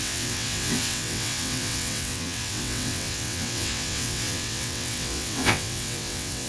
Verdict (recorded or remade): remade